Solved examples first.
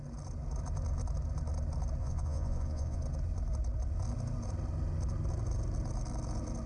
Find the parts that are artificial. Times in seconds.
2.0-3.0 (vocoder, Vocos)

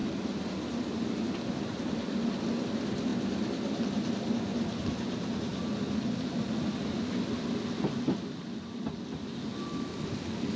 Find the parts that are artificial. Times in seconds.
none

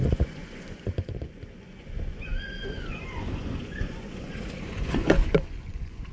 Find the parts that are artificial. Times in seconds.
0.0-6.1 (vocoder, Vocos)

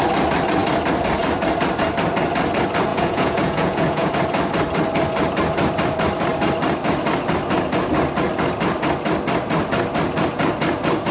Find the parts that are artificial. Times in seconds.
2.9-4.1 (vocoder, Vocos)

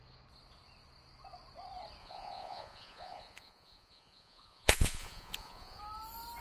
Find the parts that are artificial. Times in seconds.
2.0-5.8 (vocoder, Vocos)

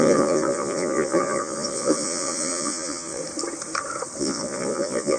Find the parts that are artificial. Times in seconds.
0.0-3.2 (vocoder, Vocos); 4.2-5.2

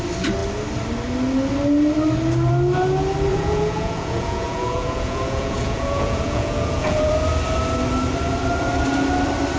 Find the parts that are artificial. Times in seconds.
3.3-7.1 (vocoder, Vocos)